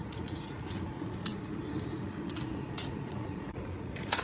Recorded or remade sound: remade